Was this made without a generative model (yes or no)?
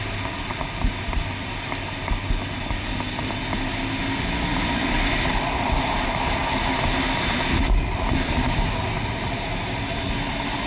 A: yes